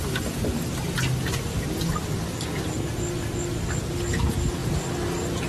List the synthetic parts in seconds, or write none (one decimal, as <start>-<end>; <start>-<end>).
none

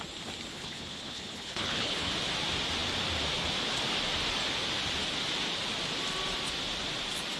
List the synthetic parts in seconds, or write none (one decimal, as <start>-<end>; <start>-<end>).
0.5-2.1

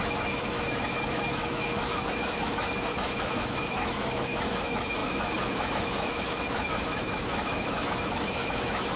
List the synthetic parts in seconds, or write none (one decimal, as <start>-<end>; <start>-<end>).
0.0-9.0

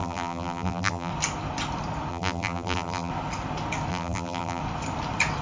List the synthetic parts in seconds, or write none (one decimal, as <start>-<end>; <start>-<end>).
0.0-1.1; 2.1-3.1; 3.9-4.6

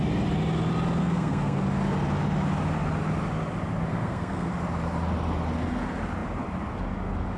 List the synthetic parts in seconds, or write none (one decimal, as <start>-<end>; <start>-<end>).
1.0-1.6; 3.9-4.5

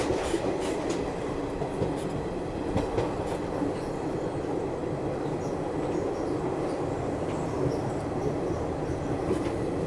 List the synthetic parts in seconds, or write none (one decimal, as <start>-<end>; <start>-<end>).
none

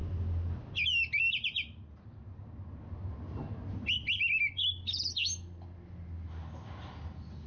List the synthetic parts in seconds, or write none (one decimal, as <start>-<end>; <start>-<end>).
none